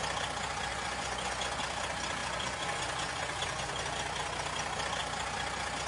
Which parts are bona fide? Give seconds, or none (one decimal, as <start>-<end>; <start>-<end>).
0.0-0.7; 1.6-2.2; 3.8-5.9